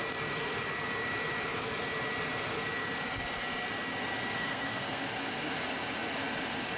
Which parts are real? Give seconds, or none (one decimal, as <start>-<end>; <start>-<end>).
0.0-4.4; 5.0-6.8